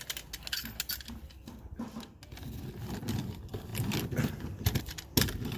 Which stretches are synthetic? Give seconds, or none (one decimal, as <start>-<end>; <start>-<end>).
none

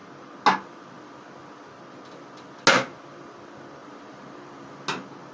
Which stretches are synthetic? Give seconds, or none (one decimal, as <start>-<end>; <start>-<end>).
3.8-4.7

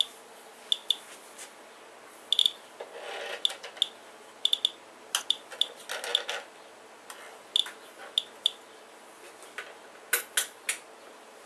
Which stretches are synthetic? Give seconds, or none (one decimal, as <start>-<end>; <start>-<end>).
none

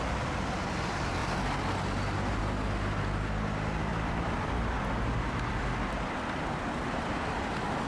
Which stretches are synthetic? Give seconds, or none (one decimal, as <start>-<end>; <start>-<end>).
1.2-2.4; 3.9-7.4